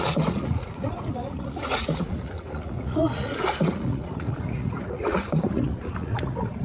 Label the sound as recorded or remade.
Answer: remade